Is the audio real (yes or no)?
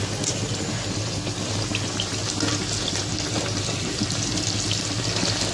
yes